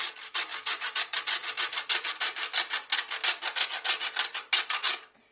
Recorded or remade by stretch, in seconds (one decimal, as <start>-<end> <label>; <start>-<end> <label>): 0.0-5.3 recorded

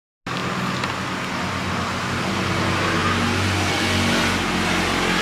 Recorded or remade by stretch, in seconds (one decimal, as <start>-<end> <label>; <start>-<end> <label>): 0.0-5.2 recorded

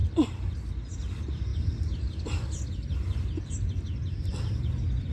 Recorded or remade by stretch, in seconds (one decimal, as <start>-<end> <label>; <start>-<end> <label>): 0.0-5.1 recorded